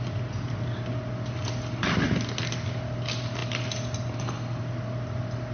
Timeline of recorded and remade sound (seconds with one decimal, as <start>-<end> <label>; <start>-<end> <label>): 0.0-5.5 recorded